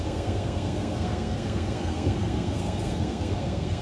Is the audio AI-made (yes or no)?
yes